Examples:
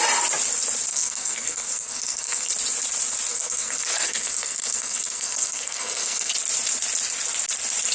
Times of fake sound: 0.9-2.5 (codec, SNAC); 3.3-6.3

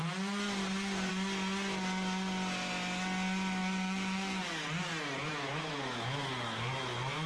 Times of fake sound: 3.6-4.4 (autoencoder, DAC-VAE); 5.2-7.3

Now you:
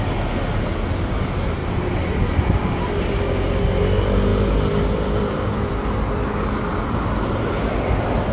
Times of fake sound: 1.6-2.9 (vocoder, BigVGAN v2); 4.3-5.8